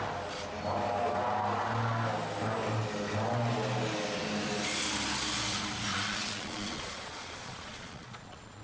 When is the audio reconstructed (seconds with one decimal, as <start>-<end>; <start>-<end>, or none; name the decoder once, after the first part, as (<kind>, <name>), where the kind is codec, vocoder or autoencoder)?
5.9-8.6 (vocoder, Vocos)